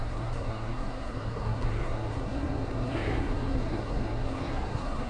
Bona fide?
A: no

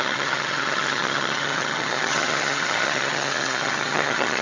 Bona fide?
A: no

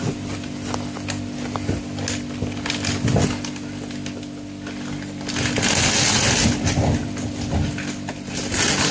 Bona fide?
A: yes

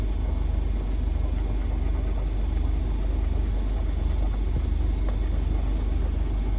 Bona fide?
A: yes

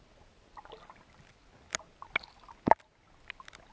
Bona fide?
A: yes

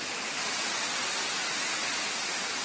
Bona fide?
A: yes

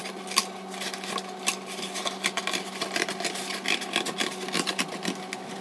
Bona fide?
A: yes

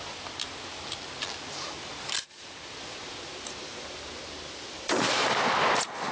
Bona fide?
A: yes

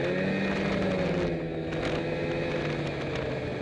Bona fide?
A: yes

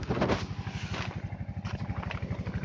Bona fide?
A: yes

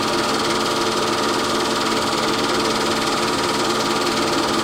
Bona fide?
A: yes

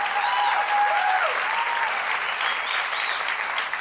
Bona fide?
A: yes